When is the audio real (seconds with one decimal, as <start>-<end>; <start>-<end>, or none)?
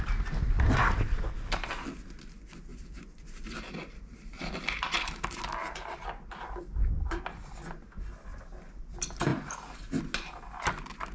0.0-2.7; 3.7-5.6; 7.5-8.3; 8.9-11.1